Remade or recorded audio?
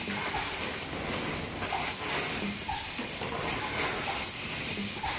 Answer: recorded